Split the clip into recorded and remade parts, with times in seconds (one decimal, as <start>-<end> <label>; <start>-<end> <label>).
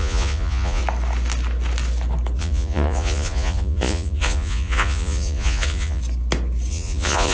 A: 0.0-0.8 remade; 0.8-2.4 recorded; 2.4-6.0 remade; 6.0-6.7 recorded; 6.7-7.3 remade